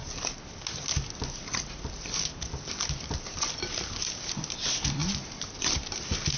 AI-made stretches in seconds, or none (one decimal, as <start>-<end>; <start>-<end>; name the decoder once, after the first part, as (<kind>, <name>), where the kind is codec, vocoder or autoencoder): none